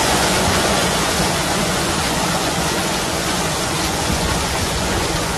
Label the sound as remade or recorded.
remade